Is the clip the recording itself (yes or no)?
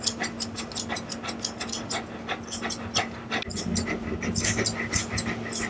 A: yes